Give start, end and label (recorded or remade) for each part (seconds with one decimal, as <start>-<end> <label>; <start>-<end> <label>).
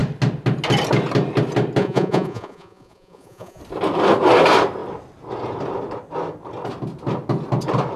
0.0-1.8 recorded; 1.8-3.6 remade; 3.6-8.0 recorded